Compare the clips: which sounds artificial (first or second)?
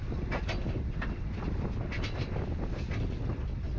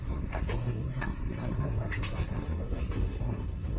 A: second